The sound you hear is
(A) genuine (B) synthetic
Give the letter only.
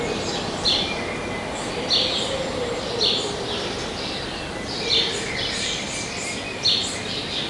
A